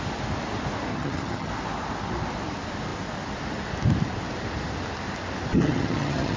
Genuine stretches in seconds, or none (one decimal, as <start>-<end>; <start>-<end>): 0.0-0.9; 1.5-5.5